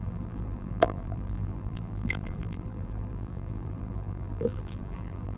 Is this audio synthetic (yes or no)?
yes